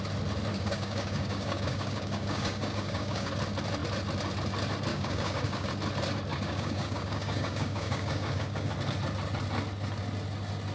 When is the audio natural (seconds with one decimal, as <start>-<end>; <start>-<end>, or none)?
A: 0.0-0.5; 3.3-4.9; 5.7-6.3; 8.7-10.7